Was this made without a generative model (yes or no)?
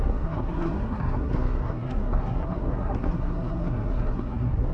no